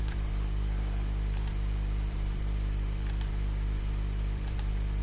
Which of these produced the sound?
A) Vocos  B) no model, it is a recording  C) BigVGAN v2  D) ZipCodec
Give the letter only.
C